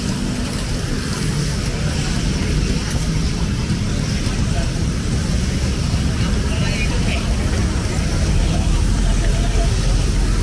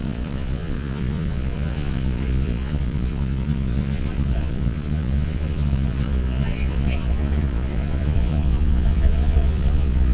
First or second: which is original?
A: first